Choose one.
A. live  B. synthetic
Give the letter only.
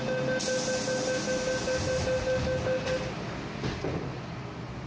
A